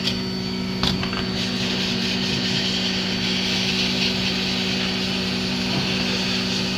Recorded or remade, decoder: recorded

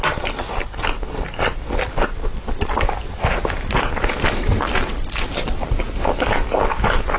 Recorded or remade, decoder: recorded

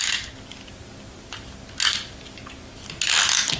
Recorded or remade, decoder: recorded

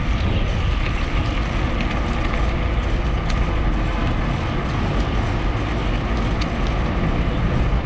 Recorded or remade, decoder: recorded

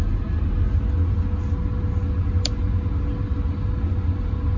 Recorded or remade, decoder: recorded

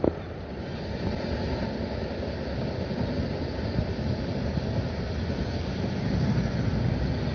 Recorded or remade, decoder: recorded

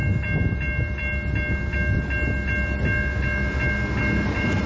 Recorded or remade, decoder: recorded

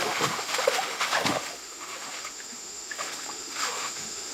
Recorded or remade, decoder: remade, autoencoder, DAC-VAE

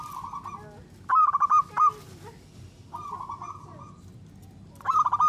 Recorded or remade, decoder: recorded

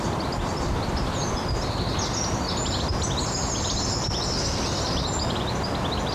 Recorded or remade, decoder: recorded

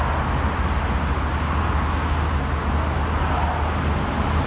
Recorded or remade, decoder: recorded